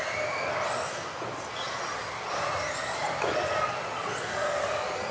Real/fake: real